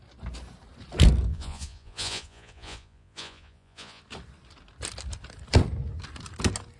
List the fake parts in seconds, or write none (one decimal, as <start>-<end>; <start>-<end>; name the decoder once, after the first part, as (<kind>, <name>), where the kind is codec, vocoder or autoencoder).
1.3-4.0 (vocoder, Vocos)